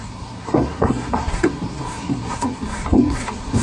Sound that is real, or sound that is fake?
fake